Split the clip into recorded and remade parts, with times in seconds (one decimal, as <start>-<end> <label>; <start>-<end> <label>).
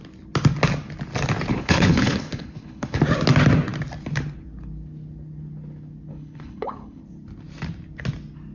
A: 0.0-1.5 recorded; 1.5-3.0 remade; 3.0-6.1 recorded; 6.1-7.0 remade; 7.0-8.5 recorded